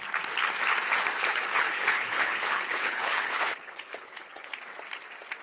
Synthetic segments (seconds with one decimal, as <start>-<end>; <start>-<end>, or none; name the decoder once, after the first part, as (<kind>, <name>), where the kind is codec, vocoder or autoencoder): 1.3-4.5 (codec, HILCodec)